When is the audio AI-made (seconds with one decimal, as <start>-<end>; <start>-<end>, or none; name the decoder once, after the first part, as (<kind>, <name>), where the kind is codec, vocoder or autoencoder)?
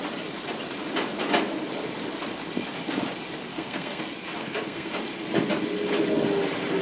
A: 3.5-4.0 (codec, SNAC); 4.4-4.9